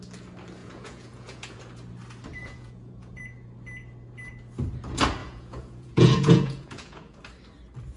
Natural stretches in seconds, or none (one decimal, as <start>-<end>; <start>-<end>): 0.0-0.6; 1.6-2.4; 3.2-5.2; 7.2-8.0